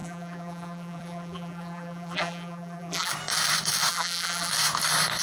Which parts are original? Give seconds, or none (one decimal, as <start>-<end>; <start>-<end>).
3.1-3.9; 4.5-5.2